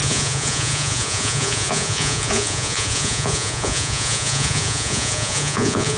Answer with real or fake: fake